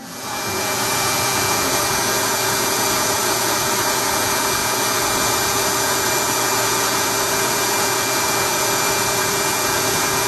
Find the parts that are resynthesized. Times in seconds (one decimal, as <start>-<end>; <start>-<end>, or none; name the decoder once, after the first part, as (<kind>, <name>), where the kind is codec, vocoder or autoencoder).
0.0-10.3 (vocoder, Vocos)